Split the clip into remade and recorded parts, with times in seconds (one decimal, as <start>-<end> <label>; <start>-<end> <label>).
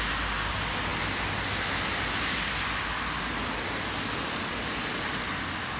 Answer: 0.0-5.8 recorded